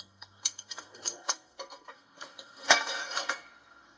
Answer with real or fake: fake